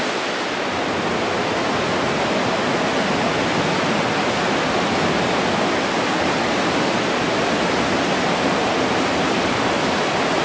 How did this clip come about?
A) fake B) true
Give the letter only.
B